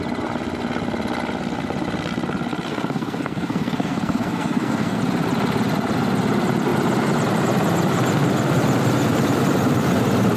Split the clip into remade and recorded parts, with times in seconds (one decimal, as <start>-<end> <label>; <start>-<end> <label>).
0.0-2.7 recorded; 2.7-5.0 remade; 5.0-10.4 recorded